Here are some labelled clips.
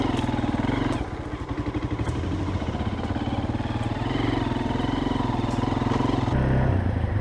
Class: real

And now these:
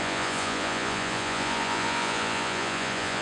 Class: fake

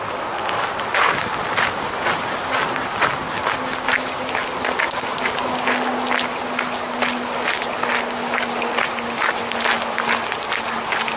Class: real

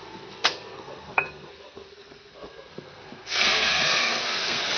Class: fake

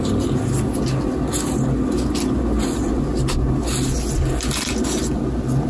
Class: real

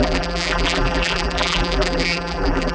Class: fake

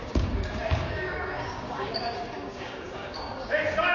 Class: fake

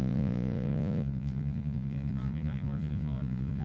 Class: fake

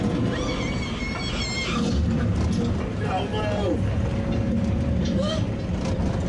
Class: real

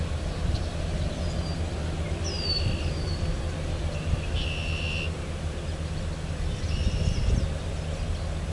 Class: real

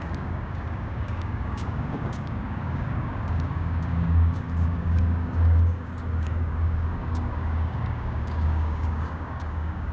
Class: fake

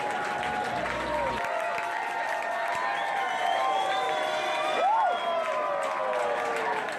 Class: real